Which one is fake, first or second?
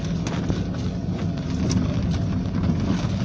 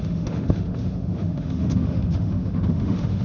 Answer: second